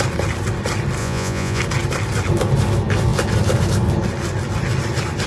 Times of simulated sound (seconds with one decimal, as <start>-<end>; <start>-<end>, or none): 1.0-1.6